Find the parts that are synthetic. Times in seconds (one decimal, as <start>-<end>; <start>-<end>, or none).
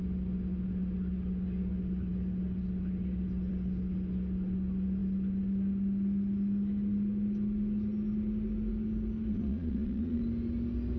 9.3-10.2